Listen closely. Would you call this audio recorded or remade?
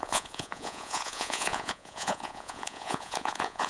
remade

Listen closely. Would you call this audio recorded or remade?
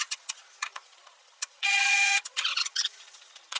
remade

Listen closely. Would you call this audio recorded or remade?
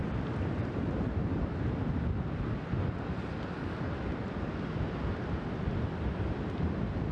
recorded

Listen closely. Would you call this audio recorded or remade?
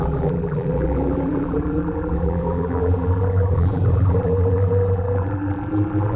remade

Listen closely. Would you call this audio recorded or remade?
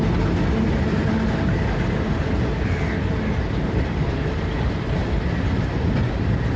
recorded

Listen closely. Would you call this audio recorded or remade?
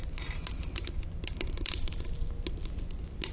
recorded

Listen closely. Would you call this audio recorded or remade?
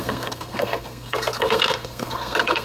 remade